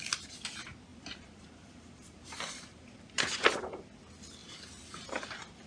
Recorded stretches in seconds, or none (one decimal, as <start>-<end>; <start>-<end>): 0.0-0.9; 3.4-4.4; 5.2-5.7